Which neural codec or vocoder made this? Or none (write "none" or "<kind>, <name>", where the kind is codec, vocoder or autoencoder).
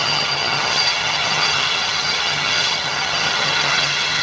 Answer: vocoder, HiFi-GAN